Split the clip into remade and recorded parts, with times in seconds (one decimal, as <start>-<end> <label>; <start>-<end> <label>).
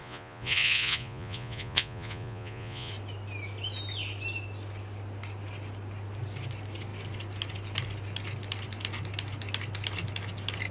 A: 0.0-2.9 remade; 2.9-10.7 recorded